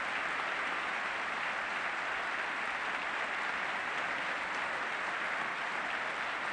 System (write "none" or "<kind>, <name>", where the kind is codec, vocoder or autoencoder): none